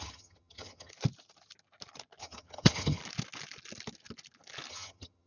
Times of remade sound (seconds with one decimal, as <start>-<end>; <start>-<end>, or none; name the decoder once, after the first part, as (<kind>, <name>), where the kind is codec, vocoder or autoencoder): 0.0-0.9 (vocoder, HiFi-GAN); 2.2-3.0; 4.7-5.3